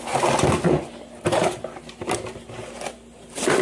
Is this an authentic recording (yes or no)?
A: yes